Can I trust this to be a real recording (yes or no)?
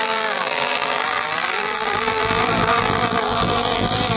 no